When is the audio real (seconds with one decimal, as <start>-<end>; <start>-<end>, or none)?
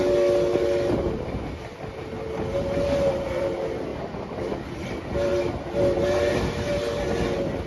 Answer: 0.0-7.7